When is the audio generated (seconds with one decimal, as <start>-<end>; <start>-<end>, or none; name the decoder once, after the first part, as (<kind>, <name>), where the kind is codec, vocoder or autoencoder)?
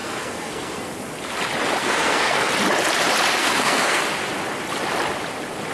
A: 0.0-0.9 (codec, SNAC); 1.8-2.5; 3.4-4.0